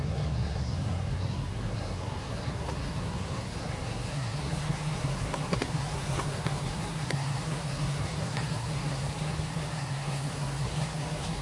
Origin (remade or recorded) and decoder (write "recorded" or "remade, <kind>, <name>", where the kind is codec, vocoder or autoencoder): remade, codec, SNAC